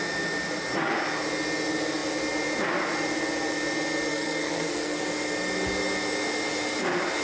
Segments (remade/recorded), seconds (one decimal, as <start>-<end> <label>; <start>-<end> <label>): 0.0-4.1 recorded; 4.1-5.0 remade; 5.0-7.2 recorded